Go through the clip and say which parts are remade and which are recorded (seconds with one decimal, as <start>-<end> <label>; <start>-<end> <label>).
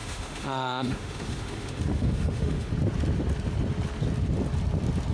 0.0-2.7 remade; 2.7-5.1 recorded